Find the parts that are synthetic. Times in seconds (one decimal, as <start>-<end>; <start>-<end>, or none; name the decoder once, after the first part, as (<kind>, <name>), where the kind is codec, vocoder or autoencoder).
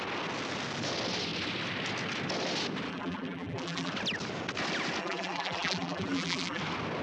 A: 2.9-3.9 (vocoder, BigVGAN v2); 5.0-6.6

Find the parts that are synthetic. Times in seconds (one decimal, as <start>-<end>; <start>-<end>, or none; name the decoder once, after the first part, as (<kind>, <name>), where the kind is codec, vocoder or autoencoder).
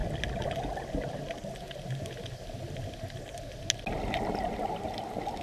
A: none